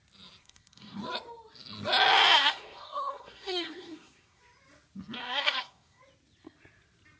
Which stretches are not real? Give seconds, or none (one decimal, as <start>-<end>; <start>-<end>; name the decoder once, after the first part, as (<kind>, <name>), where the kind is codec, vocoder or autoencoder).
0.4-1.0 (codec, SNAC); 2.4-4.4; 5.2-6.0